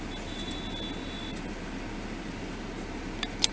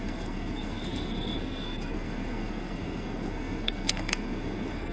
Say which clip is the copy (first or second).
second